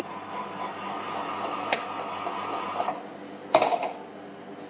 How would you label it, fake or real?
real